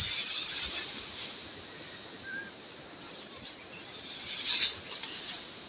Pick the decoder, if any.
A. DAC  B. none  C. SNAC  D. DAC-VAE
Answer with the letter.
B